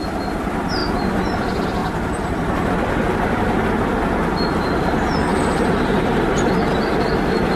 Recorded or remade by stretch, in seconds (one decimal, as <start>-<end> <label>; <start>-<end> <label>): 0.0-1.8 recorded; 1.8-2.8 remade; 2.8-5.3 recorded; 5.3-6.5 remade; 6.5-7.6 recorded